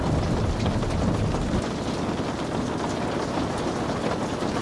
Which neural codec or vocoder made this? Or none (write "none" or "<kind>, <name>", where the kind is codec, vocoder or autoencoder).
none